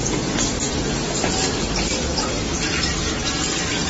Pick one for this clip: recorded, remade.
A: recorded